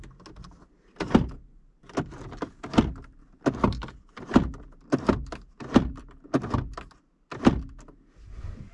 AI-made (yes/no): no